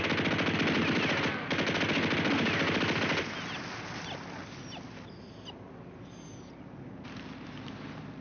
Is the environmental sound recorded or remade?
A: recorded